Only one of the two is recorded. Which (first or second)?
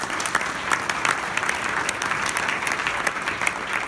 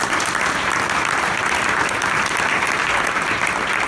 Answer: first